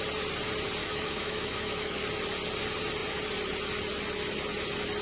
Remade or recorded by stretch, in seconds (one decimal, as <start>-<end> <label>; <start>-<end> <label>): 0.0-0.8 recorded; 0.8-2.0 remade; 2.0-5.0 recorded